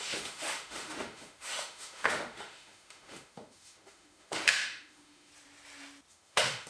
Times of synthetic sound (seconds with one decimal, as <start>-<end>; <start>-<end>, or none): 0.0-5.3; 6.1-6.7